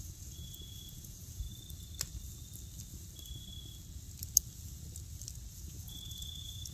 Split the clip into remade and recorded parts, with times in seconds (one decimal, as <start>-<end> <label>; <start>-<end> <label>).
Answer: 0.0-1.5 remade; 1.5-5.5 recorded; 5.5-6.7 remade